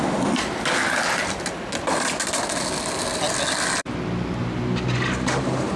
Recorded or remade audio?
recorded